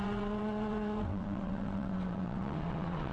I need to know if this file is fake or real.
fake